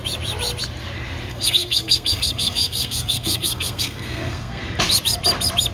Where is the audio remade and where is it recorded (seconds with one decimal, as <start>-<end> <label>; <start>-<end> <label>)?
0.0-1.3 recorded; 1.3-4.6 remade; 4.6-5.7 recorded